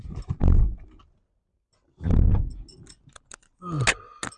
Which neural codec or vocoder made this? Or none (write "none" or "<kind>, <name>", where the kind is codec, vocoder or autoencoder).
none